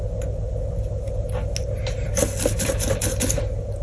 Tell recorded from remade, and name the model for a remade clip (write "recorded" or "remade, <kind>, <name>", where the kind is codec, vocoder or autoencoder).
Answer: recorded